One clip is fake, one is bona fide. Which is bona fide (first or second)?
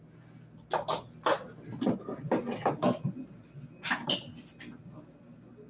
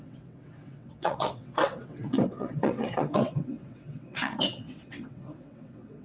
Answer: first